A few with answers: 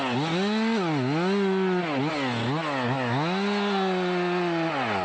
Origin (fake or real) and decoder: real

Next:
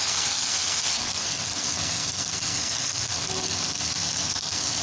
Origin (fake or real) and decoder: fake, codec, SNAC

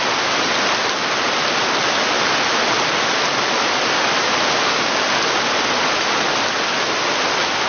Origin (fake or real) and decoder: real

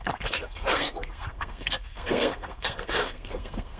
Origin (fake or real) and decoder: fake, codec, SNAC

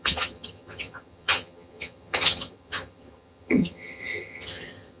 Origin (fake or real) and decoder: fake, vocoder, HiFi-GAN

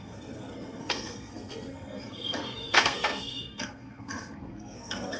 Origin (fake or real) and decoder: fake, codec, SNAC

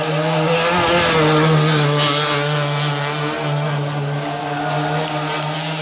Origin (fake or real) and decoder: real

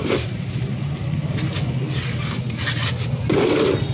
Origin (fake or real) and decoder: real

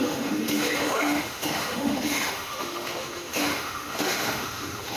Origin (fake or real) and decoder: fake, autoencoder, DAC-VAE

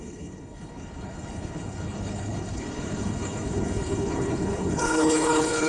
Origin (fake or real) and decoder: fake, codec, HILCodec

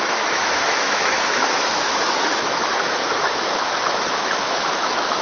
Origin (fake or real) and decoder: fake, autoencoder, DAC-VAE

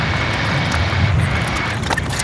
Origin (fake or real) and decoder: real